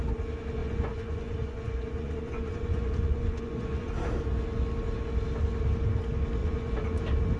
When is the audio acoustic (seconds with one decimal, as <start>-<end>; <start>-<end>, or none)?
0.0-0.6; 3.9-6.4; 7.0-7.4